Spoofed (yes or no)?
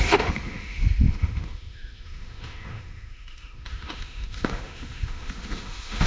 yes